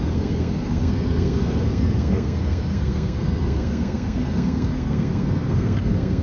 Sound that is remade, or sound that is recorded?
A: remade